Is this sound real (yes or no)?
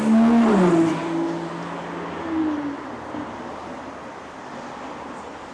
yes